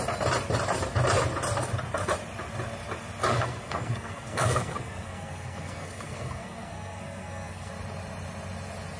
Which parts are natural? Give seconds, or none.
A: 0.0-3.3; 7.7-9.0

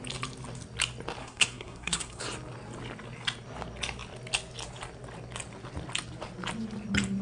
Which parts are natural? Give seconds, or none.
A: 0.0-1.2; 2.2-7.2

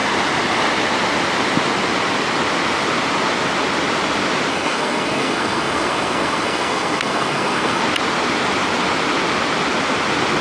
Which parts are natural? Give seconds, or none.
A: 0.0-4.5; 7.8-10.4